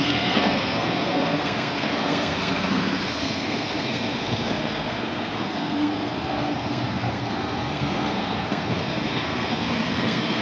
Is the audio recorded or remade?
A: remade